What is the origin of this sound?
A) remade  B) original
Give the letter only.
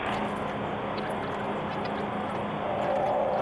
B